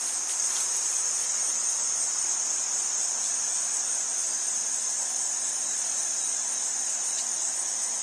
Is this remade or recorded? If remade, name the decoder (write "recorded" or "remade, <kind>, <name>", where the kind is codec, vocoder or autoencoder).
recorded